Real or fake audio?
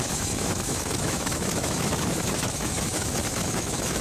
fake